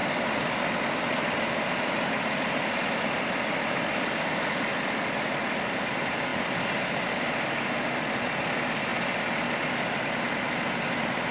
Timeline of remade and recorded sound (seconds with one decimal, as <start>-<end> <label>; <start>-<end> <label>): 0.0-11.3 recorded